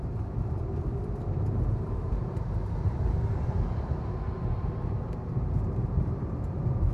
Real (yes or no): no